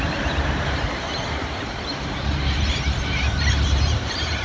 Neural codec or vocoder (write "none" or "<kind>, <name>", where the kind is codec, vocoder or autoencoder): vocoder, BigVGAN v2